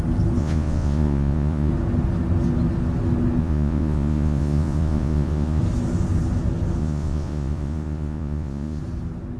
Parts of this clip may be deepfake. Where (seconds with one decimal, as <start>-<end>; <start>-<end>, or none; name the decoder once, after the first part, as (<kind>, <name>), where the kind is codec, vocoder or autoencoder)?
0.4-1.7 (vocoder, Vocos); 3.4-5.6; 6.8-8.8